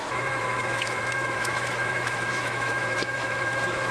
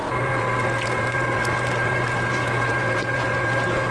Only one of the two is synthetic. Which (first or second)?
first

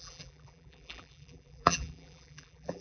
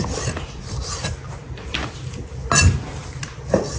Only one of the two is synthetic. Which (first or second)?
first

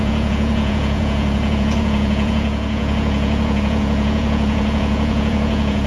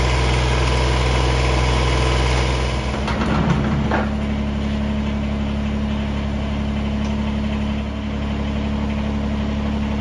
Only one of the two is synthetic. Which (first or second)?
first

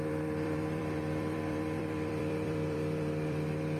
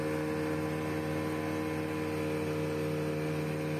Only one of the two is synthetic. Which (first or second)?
first